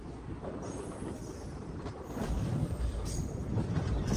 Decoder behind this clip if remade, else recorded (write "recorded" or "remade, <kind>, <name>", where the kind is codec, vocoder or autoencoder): remade, vocoder, BigVGAN v2